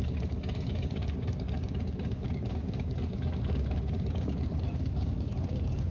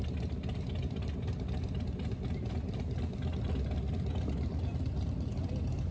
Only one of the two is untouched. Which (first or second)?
second